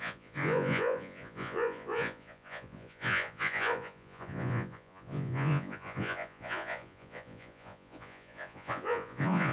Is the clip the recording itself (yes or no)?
no